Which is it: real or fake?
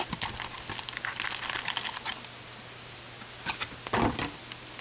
real